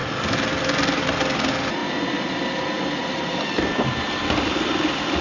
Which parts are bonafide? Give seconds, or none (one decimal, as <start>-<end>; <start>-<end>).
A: 0.6-1.8